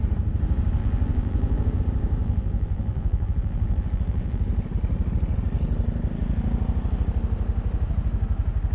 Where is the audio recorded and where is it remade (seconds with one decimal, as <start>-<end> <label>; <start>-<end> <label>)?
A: 0.0-0.8 recorded; 0.8-1.8 remade; 1.8-2.2 recorded; 2.2-4.4 remade; 4.4-8.7 recorded